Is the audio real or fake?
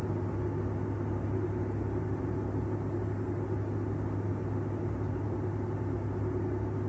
real